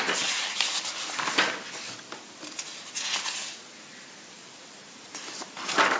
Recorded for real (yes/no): yes